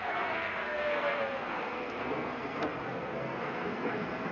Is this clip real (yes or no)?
no